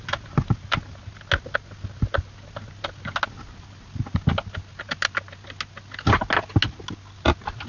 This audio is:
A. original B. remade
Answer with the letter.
A